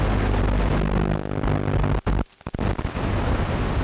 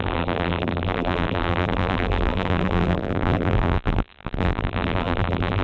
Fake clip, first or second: second